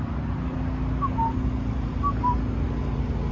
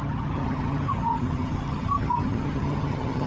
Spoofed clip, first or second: second